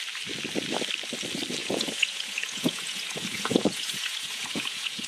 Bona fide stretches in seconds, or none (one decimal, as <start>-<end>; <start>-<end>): 0.0-1.6